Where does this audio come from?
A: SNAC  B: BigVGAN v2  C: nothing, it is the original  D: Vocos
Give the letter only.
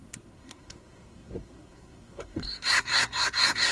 A